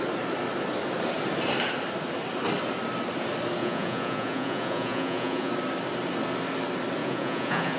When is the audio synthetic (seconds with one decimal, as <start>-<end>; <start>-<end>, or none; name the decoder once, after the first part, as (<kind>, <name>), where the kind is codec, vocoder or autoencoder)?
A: 3.6-5.5 (vocoder, Vocos); 7.0-7.8